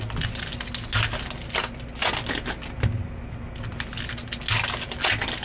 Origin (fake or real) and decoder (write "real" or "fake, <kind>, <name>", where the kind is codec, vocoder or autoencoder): real